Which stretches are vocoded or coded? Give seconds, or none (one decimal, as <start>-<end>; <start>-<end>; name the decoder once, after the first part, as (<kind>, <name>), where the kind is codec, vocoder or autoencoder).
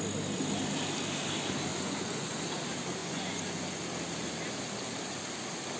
1.7-2.4 (vocoder, Vocos); 3.0-3.8